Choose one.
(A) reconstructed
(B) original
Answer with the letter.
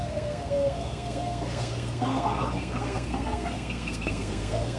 A